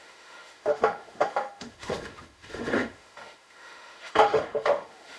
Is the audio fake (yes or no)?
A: yes